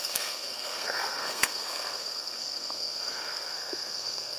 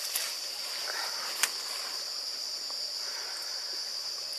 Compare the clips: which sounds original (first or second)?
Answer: second